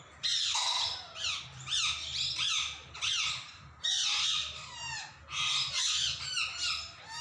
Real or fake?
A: real